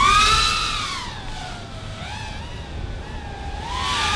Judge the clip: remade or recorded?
recorded